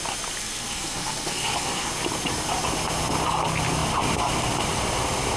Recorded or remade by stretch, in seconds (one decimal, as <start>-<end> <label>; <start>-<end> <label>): 0.0-0.4 recorded; 0.4-1.9 remade; 1.9-5.4 recorded